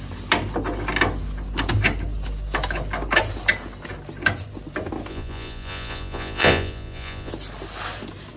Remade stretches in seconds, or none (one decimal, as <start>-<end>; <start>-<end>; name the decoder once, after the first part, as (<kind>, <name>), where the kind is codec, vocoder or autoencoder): 5.1-7.3 (vocoder, Vocos)